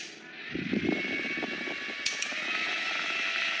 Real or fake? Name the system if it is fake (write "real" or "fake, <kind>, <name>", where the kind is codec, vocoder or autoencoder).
real